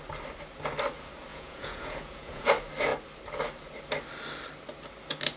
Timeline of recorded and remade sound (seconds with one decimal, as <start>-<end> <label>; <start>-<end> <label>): 0.0-1.3 recorded; 1.3-2.5 remade; 2.5-5.4 recorded